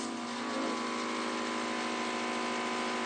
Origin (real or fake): real